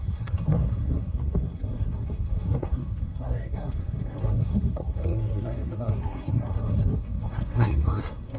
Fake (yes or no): yes